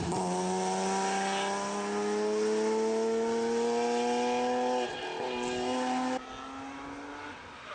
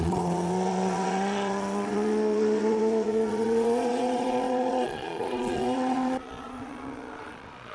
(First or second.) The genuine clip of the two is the first